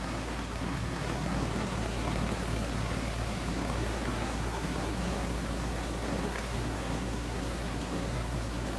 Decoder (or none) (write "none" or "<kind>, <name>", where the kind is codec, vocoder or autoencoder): codec, SNAC